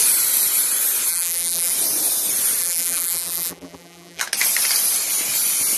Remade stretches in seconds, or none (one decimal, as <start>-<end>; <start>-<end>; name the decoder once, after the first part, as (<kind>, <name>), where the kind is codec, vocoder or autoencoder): 1.1-1.7 (vocoder, BigVGAN v2); 2.6-4.2